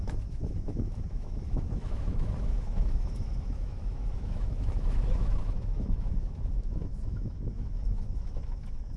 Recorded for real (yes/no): no